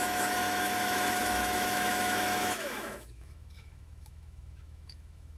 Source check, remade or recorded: remade